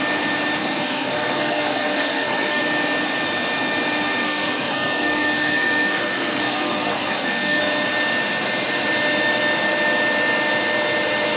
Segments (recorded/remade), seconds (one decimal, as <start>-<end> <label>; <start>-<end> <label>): 0.0-0.6 recorded; 0.6-2.6 remade; 2.6-4.2 recorded; 4.2-7.6 remade; 7.6-11.4 recorded